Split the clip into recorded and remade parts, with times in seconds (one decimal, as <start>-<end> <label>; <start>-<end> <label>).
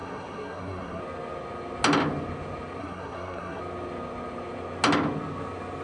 0.0-1.0 remade; 1.0-2.8 recorded; 2.8-3.6 remade; 3.6-5.8 recorded